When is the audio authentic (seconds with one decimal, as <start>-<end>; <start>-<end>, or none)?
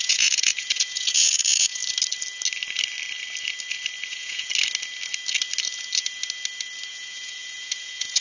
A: 1.8-4.1; 4.5-6.9